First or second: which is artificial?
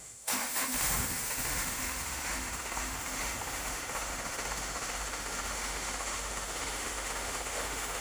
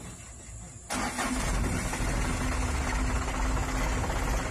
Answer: first